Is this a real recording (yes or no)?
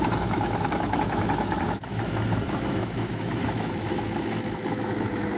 no